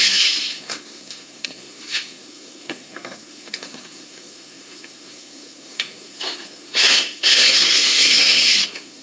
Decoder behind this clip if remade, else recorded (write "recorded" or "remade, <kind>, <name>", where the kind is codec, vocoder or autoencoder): remade, codec, SNAC